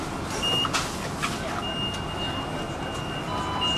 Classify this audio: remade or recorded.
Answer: recorded